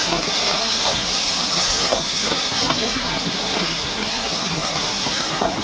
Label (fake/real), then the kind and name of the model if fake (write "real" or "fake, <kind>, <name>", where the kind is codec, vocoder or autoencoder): fake, codec, SNAC